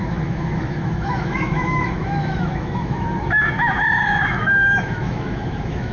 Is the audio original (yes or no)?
no